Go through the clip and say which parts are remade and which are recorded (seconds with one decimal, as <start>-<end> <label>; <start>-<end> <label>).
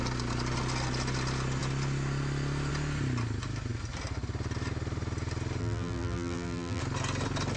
0.0-5.6 recorded; 5.6-6.8 remade; 6.8-7.6 recorded